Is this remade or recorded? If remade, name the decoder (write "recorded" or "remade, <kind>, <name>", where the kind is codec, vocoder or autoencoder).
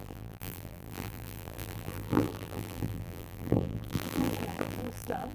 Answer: remade, vocoder, BigVGAN v2